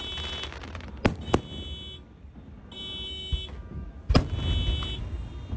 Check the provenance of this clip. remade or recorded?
recorded